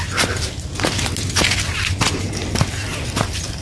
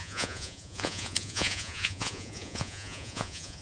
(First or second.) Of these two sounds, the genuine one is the first